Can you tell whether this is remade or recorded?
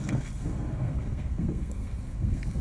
remade